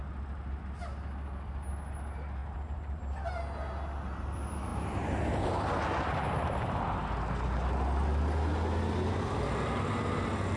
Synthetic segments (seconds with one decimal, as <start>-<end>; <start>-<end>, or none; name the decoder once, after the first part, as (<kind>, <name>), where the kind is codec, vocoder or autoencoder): 2.4-3.0 (vocoder, BigVGAN v2)